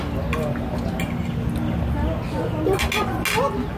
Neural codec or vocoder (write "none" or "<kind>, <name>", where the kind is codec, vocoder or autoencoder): none